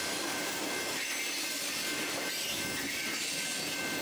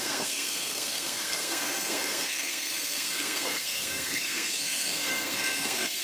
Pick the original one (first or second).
first